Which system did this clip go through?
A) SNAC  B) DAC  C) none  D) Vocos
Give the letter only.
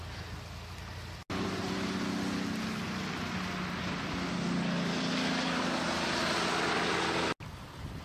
C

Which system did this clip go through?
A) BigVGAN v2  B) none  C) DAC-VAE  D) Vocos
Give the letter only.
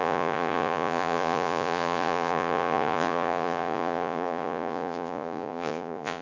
D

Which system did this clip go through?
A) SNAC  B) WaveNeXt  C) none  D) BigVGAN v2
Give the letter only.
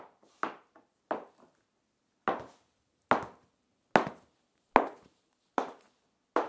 C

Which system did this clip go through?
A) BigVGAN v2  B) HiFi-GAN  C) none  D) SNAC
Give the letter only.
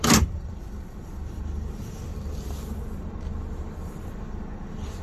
A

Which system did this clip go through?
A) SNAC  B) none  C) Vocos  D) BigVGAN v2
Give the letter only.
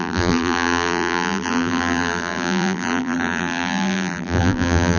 D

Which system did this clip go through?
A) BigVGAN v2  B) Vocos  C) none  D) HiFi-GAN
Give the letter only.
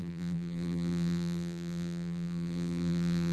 A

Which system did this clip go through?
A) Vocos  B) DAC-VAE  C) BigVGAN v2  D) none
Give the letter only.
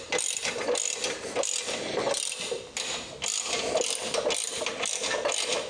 D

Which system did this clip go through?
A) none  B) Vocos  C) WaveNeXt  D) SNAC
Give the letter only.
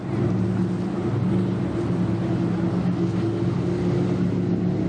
A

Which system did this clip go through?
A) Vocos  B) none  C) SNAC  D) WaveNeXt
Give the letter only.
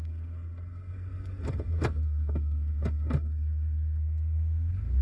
C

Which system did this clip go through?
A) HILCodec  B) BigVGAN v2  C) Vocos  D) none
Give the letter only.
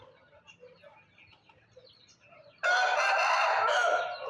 D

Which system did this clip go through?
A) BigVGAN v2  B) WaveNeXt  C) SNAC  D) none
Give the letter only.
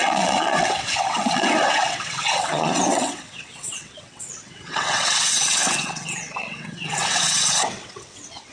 B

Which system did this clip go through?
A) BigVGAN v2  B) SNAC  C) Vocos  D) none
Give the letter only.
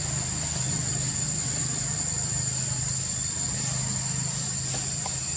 D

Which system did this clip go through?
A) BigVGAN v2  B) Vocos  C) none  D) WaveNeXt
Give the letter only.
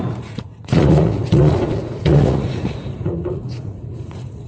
B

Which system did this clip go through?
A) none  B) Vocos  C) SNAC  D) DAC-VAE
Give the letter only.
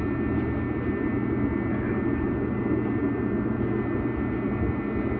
A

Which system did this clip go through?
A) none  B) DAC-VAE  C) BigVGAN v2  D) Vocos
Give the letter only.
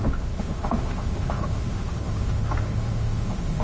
B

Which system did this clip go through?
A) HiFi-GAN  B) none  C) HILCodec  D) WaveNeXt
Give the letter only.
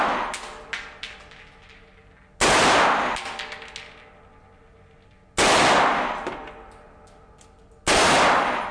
B